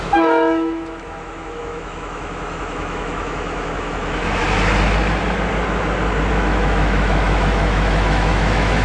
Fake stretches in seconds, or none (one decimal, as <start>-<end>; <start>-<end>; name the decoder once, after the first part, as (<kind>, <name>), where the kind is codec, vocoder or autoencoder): 0.0-4.4 (autoencoder, DAC-VAE); 6.3-8.8